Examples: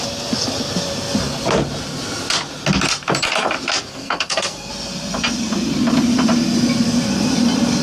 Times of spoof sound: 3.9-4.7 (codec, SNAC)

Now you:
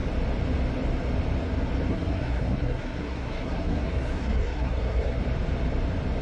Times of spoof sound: 1.9-5.2 (codec, SNAC)

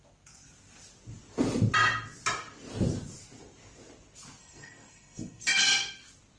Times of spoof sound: 4.4-5.6 (codec, SNAC)

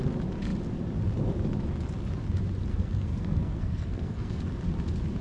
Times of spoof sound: 2.7-4.4 (codec, SNAC)

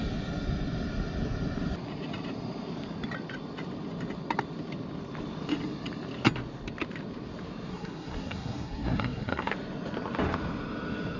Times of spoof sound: 7.7-9.5 (codec, SNAC)

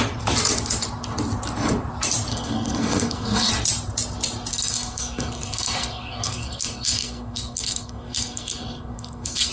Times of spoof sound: 2.3-3.5 (codec, SNAC); 4.5-9.5

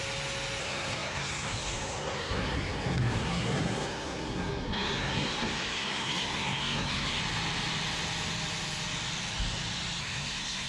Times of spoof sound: 0.6-7.2 (codec, SNAC); 10.0-10.7